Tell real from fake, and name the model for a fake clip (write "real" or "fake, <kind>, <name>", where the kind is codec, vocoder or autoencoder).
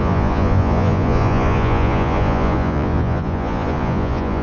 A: fake, vocoder, Vocos